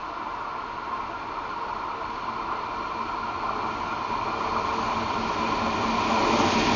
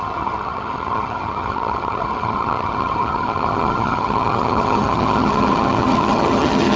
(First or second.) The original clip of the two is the first